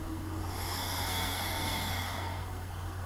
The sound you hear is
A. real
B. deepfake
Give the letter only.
B